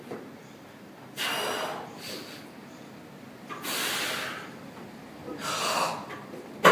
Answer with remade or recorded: remade